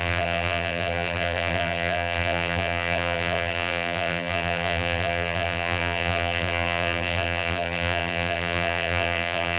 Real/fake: fake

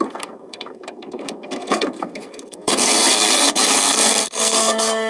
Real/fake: fake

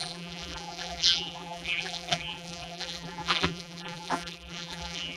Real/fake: fake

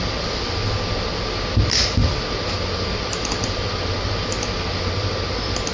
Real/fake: real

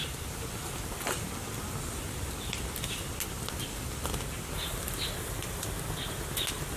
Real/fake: real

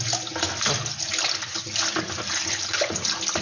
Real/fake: real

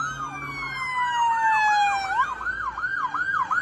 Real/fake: real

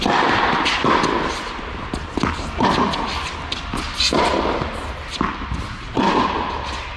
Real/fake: real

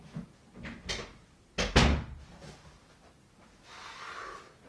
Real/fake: real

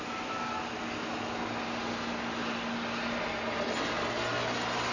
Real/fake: real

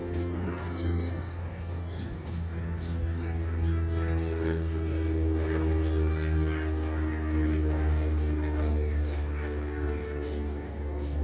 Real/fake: fake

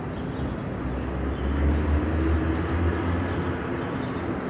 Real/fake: real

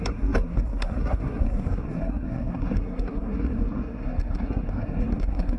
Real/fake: fake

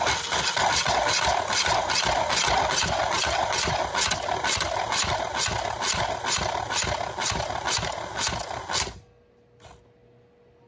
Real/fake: real